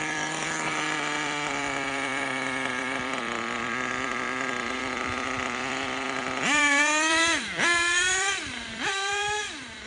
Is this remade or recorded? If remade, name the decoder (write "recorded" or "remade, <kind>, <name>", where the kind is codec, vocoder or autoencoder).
remade, vocoder, BigVGAN v2